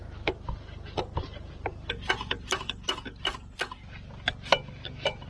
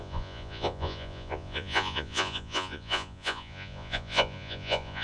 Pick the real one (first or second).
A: first